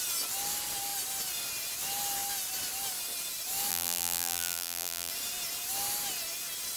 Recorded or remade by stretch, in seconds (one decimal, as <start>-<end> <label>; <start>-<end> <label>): 0.0-3.7 recorded; 3.7-5.1 remade; 5.1-6.8 recorded